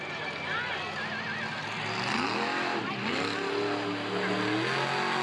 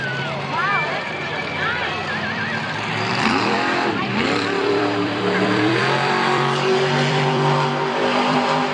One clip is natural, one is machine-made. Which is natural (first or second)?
first